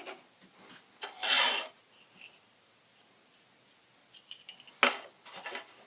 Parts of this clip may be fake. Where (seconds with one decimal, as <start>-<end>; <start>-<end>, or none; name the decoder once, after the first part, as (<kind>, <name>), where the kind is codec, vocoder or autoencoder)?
none